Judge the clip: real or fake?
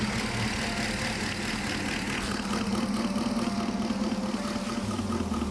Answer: real